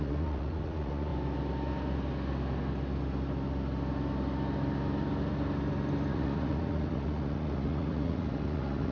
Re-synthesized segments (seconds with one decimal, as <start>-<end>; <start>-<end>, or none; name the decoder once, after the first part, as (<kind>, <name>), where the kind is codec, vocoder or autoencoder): 0.0-1.1 (vocoder, Vocos); 6.1-8.9